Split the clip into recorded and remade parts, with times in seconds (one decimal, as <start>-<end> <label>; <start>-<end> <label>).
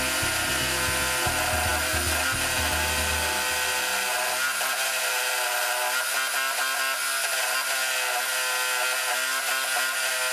0.0-10.3 recorded